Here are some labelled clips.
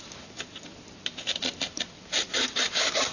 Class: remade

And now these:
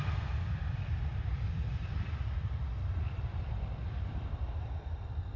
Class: remade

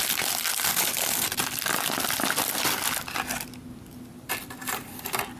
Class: remade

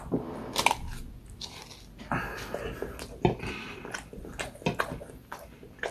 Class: recorded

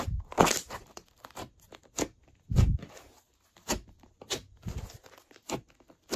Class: recorded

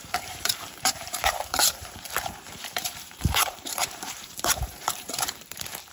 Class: remade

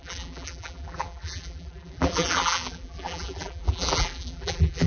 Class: remade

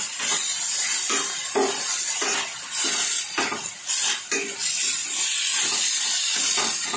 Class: recorded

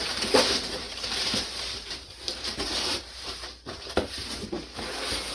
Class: remade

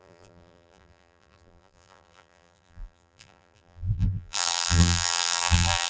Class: remade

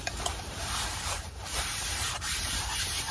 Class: remade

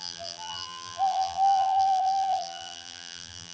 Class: remade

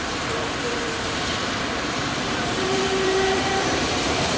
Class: remade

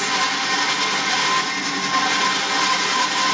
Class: recorded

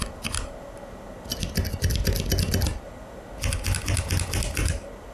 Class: recorded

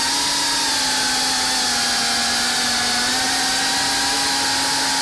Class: recorded